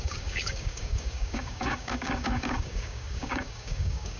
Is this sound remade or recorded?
remade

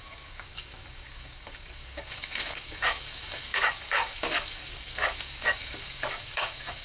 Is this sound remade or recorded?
remade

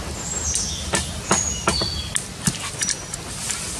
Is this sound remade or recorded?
recorded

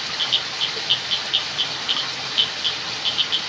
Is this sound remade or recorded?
recorded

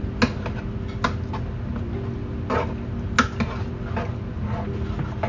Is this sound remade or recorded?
recorded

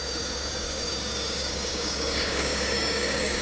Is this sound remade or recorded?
remade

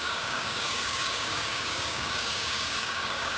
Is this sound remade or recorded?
remade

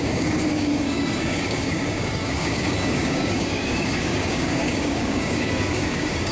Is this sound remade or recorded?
remade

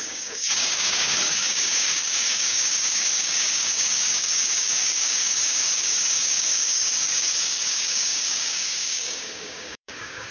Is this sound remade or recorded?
remade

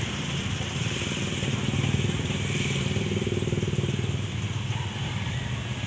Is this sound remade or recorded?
recorded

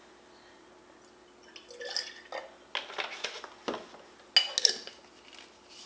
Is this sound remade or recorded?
recorded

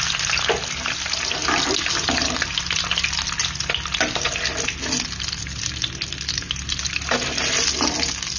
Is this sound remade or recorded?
recorded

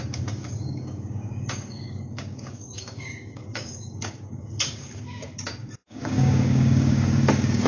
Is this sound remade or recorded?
remade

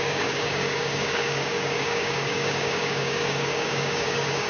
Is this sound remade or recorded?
remade